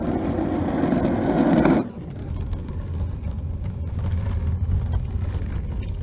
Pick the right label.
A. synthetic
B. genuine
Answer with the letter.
B